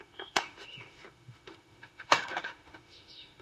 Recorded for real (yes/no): no